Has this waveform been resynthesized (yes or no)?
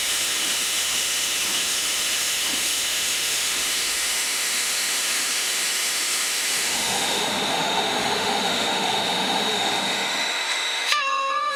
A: yes